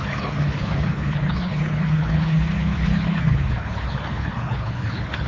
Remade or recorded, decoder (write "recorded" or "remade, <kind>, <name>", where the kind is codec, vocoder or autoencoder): remade, codec, HILCodec